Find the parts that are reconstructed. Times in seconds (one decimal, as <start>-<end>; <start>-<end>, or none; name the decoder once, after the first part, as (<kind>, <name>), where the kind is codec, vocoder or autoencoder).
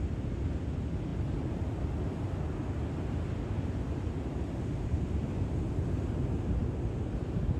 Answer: none